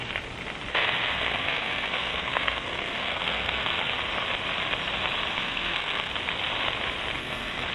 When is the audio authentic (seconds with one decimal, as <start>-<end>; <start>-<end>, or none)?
0.0-0.7; 3.9-5.3; 6.1-7.2